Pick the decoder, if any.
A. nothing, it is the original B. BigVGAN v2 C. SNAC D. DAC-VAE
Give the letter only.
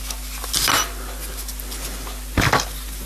A